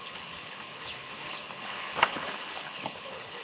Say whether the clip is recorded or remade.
remade